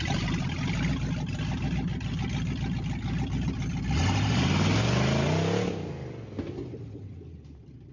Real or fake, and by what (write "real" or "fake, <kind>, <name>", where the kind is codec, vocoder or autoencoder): real